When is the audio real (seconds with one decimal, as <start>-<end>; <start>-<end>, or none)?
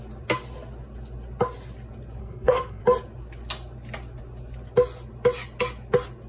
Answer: 0.0-2.2; 2.8-6.3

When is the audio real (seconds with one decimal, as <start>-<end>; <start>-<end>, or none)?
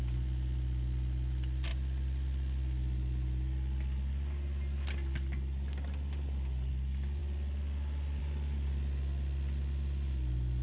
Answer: 0.0-7.2; 8.2-10.6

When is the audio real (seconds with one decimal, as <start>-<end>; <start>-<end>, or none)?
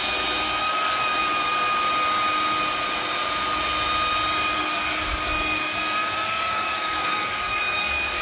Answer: 0.0-0.6; 1.2-4.6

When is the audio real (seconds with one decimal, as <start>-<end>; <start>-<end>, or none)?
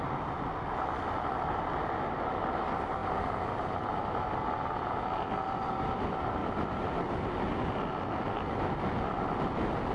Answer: 0.0-9.9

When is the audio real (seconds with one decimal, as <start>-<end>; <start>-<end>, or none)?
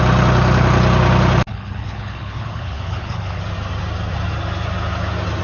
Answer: 0.0-1.5; 3.4-5.4